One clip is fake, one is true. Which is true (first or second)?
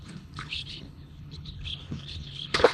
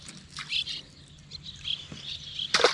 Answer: second